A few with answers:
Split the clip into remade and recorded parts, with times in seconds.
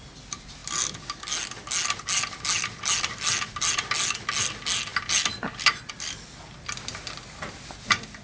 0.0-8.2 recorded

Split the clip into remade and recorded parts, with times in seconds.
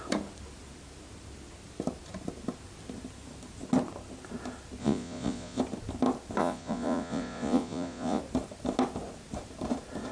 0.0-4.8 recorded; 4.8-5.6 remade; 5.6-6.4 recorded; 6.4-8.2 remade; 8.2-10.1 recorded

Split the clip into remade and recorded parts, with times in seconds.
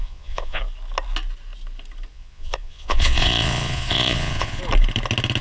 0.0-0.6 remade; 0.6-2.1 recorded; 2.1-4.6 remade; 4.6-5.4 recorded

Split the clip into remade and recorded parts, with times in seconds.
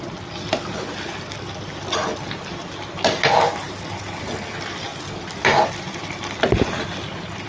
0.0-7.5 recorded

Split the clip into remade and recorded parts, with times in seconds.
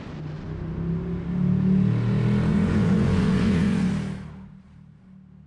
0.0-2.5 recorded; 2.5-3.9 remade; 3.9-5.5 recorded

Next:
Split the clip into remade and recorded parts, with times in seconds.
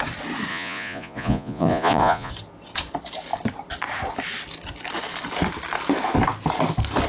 0.0-0.5 recorded; 0.5-2.3 remade; 2.3-7.1 recorded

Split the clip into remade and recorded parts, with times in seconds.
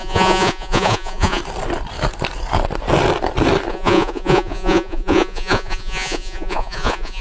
0.0-1.4 remade; 1.4-3.7 recorded; 3.7-7.2 remade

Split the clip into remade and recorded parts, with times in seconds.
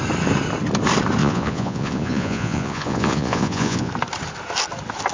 0.0-1.2 recorded; 1.2-3.9 remade; 3.9-5.1 recorded